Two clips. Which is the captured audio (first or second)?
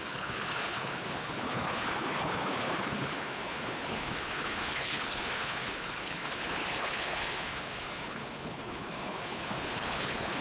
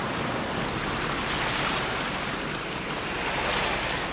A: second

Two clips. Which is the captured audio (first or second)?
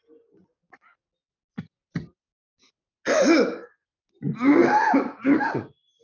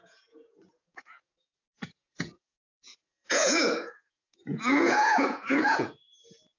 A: first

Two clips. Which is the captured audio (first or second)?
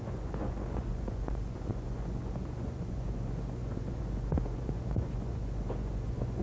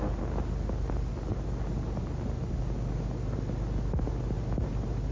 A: second